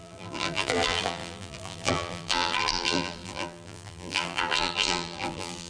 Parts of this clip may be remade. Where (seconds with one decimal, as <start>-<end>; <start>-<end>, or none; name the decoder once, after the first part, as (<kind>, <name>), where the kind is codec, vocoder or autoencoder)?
0.0-5.7 (vocoder, BigVGAN v2)